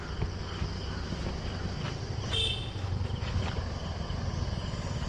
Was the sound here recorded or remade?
recorded